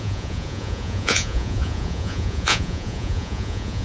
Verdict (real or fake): fake